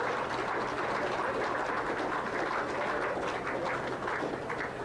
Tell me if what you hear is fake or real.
real